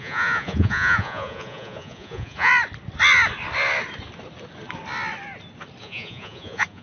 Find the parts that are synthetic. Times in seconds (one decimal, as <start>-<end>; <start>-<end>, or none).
0.0-2.5; 5.8-6.8